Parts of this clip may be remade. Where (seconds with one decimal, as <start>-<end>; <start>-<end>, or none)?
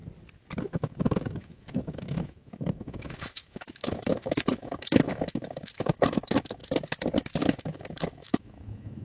0.6-6.6; 7.4-9.0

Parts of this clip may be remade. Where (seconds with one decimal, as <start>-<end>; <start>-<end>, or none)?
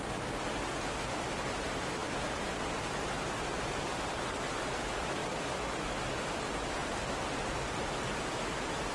none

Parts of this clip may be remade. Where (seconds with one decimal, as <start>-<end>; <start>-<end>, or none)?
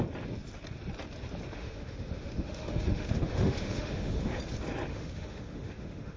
1.6-4.4; 4.9-6.2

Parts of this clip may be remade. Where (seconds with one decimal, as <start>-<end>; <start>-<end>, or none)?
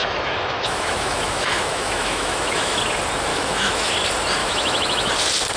0.0-2.8; 3.3-3.9; 4.4-5.1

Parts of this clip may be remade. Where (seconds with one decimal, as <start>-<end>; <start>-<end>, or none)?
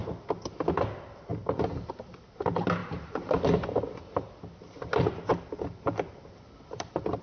none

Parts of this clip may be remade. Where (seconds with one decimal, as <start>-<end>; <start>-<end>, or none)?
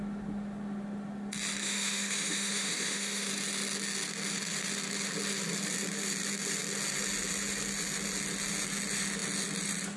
1.6-3.3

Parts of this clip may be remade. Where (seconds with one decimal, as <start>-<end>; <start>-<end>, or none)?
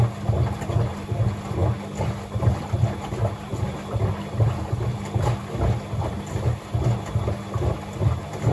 none